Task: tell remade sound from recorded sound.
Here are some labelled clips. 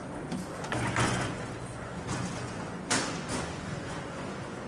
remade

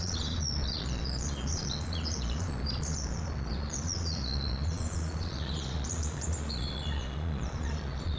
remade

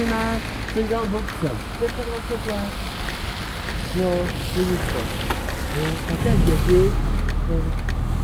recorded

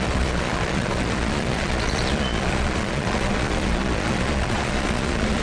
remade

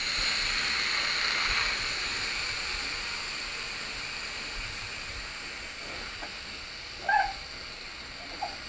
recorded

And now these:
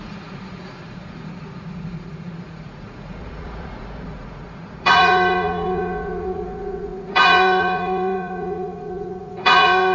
remade